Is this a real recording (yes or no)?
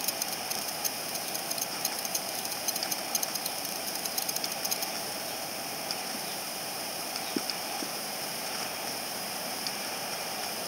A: no